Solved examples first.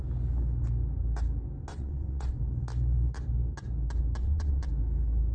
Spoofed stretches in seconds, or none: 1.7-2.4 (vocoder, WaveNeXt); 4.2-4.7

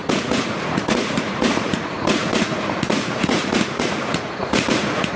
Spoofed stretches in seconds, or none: 0.0-5.2 (vocoder, Vocos)

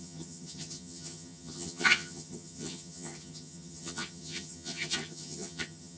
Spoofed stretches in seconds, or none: 0.0-6.0 (vocoder, HiFi-GAN)

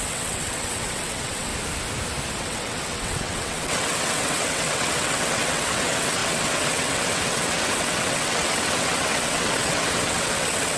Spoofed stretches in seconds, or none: 0.0-1.5 (vocoder, WaveNeXt); 2.4-10.8

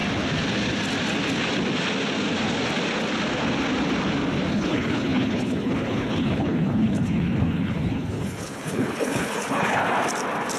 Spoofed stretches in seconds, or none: 4.5-9.8 (codec, HILCodec)

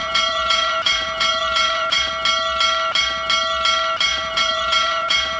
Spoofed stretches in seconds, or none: 0.0-2.1 (vocoder, Vocos); 4.1-5.4

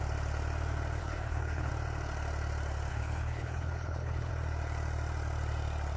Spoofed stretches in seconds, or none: 1.0-1.7 (codec, HILCodec); 2.9-4.3

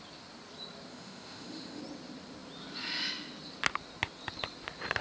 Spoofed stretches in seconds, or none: 0.9-1.8 (autoencoder, DAC-VAE)